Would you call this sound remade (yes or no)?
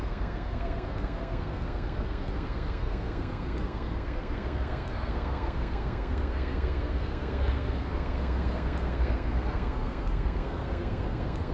yes